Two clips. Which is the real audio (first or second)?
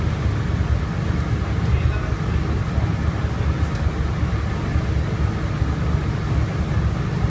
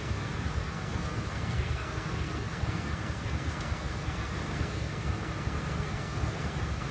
first